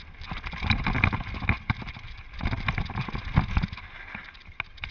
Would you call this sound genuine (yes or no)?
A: yes